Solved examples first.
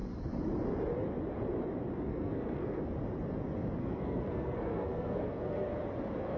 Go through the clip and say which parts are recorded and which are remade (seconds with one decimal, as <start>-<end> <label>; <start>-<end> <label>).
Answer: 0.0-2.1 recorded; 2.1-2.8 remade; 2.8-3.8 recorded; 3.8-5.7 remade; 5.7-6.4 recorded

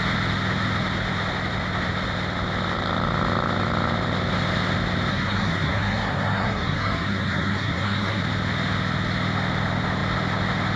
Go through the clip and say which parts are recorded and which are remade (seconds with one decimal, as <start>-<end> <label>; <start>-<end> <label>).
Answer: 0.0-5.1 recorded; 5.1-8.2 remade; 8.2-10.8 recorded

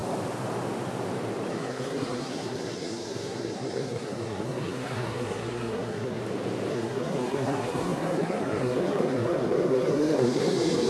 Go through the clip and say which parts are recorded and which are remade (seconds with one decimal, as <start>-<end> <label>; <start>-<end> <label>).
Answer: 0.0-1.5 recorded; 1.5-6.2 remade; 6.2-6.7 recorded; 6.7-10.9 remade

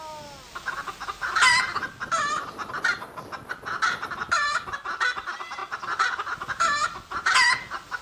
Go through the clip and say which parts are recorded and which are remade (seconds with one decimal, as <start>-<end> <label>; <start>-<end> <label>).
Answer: 0.0-8.0 recorded

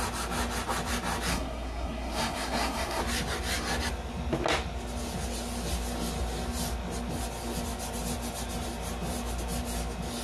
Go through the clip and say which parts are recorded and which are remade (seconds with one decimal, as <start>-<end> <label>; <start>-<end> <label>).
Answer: 0.0-1.3 recorded; 1.3-3.0 remade; 3.0-10.2 recorded